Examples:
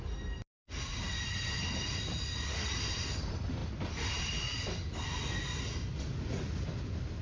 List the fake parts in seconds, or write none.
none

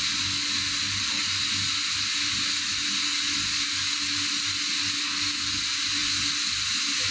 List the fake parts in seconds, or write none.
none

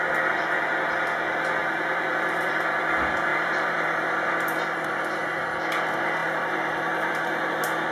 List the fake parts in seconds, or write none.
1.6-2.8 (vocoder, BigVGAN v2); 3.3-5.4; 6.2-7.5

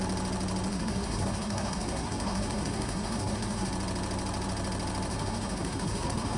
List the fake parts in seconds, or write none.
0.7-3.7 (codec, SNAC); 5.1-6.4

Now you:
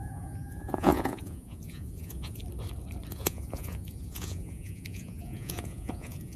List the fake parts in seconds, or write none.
0.0-2.4 (vocoder, Vocos); 3.1-6.4

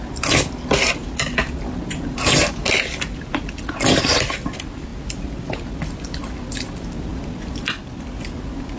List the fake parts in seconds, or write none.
none

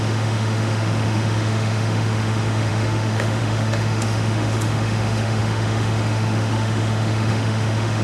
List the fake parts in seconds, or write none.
0.0-8.0 (autoencoder, DAC-VAE)